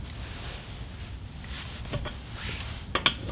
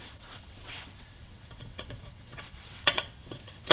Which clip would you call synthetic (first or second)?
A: second